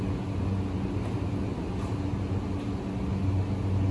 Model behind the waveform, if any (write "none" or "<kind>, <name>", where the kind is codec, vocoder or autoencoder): none